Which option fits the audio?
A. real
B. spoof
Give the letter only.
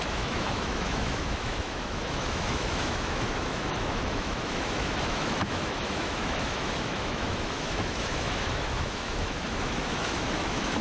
B